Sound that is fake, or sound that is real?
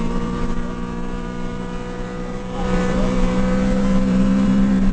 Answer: fake